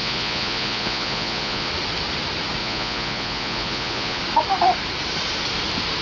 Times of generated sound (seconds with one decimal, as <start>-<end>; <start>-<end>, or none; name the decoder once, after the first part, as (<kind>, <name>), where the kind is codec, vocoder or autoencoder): 0.0-1.7 (vocoder, Vocos); 2.6-4.2